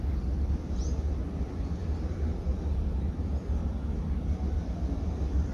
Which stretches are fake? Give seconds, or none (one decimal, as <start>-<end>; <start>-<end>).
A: none